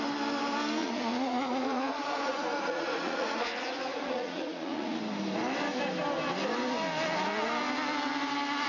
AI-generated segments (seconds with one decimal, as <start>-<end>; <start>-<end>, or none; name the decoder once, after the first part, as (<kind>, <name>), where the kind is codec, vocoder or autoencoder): 0.8-5.0 (vocoder, Vocos)